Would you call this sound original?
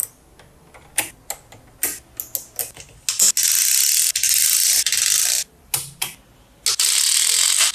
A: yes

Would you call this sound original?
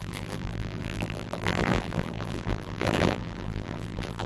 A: no